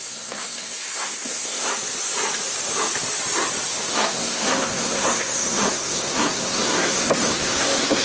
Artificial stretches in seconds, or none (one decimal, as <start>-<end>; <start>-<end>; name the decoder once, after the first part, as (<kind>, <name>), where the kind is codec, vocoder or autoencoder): 0.0-1.7 (codec, SNAC); 3.9-8.0